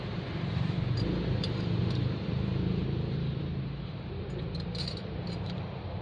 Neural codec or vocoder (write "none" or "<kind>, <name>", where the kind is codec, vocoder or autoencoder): vocoder, BigVGAN v2